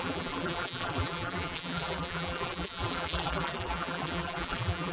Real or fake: fake